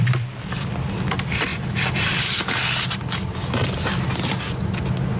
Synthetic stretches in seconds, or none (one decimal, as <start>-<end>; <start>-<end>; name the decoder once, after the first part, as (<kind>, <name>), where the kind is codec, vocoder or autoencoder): 1.5-2.4 (vocoder, BigVGAN v2)